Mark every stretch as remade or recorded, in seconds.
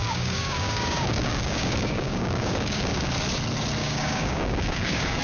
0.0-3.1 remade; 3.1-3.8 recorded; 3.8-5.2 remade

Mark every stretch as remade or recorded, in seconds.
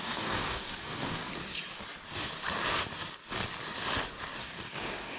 0.0-1.3 remade; 1.3-4.4 recorded; 4.4-5.2 remade